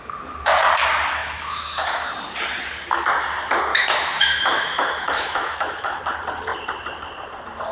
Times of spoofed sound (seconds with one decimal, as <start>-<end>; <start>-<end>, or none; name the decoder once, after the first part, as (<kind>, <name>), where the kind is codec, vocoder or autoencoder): 1.2-2.1 (autoencoder, DAC-VAE); 3.7-6.0